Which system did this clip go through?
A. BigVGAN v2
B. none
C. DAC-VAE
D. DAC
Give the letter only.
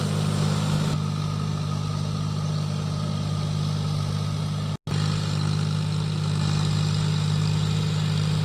B